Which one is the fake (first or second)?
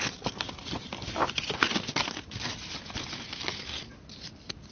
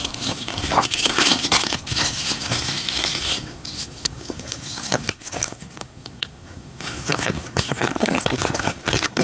second